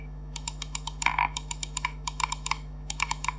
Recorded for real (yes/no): no